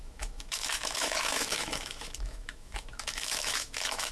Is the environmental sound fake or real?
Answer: fake